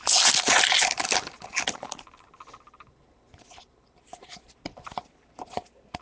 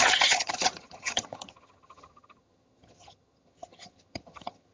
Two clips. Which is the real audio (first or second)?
first